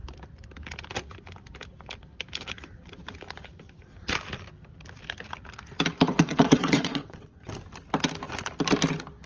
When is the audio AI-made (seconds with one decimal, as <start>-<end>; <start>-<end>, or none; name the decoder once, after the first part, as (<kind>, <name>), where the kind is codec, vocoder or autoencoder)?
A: 6.1-7.5 (vocoder, WaveNeXt)